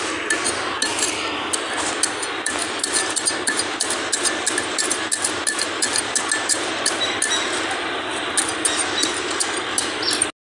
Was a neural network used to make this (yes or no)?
no